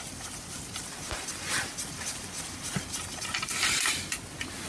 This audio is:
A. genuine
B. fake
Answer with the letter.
A